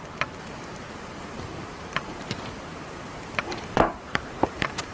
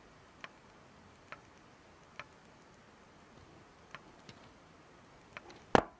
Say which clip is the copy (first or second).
first